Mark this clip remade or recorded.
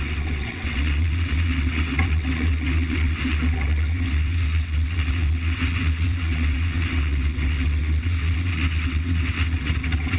remade